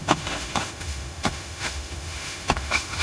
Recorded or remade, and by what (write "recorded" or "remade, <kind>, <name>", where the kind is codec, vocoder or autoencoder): remade, autoencoder, DAC-VAE